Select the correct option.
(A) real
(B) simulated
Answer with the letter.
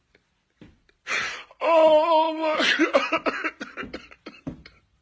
A